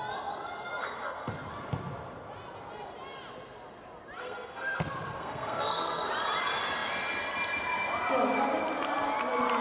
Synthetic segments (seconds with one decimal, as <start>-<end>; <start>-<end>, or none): 0.8-1.3; 4.2-4.8; 5.2-6.1